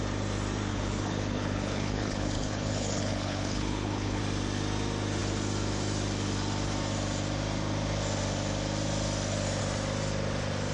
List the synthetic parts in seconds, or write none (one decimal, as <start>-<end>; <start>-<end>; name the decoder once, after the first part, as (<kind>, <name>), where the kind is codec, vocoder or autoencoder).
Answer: 0.7-4.2 (codec, HILCodec)